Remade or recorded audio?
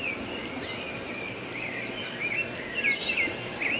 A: recorded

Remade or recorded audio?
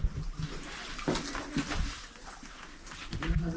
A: recorded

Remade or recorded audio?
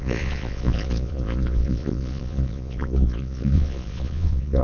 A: remade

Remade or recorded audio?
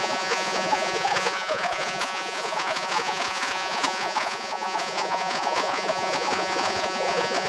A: remade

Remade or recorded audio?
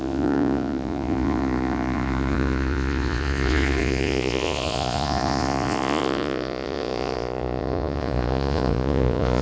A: remade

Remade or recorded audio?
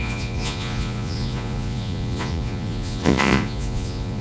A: remade